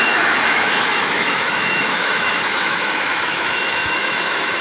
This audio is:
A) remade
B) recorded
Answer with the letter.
A